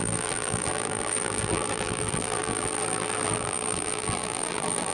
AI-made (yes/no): yes